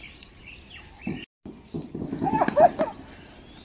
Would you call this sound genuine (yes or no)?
yes